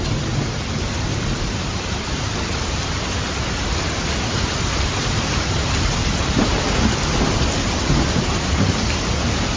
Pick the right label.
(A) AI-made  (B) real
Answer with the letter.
B